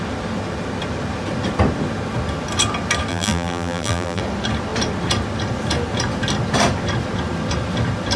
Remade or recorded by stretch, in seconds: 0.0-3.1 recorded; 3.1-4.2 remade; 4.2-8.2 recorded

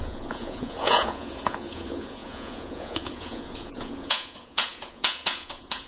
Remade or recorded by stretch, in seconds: 0.0-5.9 remade